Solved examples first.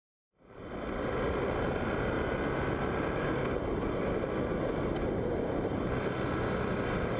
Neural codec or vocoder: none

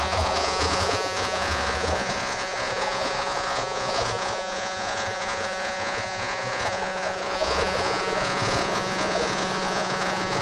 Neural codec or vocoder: vocoder, Vocos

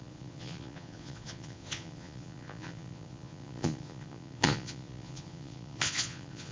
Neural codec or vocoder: vocoder, Vocos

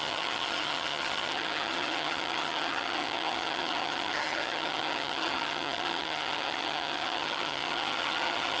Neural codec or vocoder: vocoder, HiFi-GAN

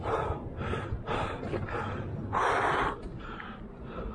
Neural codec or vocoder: none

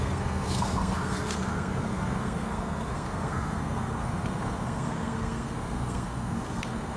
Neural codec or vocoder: codec, SNAC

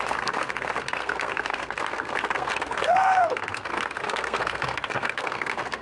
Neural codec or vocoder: codec, SNAC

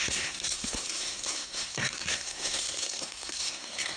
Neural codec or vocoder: codec, SNAC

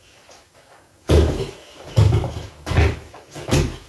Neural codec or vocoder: codec, DAC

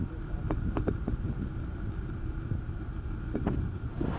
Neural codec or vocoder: none